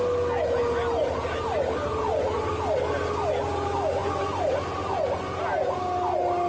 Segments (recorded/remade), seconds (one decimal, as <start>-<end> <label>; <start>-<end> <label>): 0.0-1.0 recorded; 1.0-2.5 remade; 2.5-4.0 recorded; 4.0-4.5 remade; 4.5-6.5 recorded